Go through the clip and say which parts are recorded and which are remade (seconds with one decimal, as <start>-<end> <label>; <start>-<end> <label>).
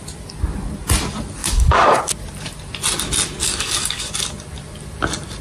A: 0.0-1.4 recorded; 1.4-2.0 remade; 2.0-3.4 recorded; 3.4-4.1 remade; 4.1-5.4 recorded